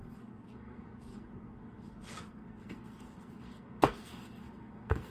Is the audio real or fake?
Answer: fake